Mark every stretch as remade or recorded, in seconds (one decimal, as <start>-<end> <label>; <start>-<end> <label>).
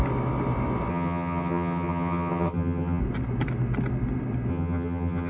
0.0-0.9 recorded; 0.9-3.0 remade; 3.0-4.5 recorded; 4.5-5.3 remade